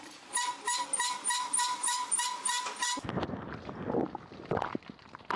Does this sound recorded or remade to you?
recorded